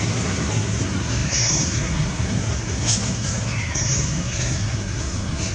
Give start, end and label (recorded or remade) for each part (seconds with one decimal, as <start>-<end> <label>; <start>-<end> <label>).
0.0-5.5 remade